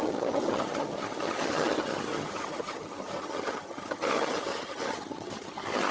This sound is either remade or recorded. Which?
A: remade